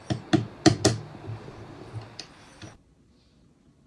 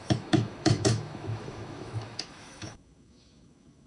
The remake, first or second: second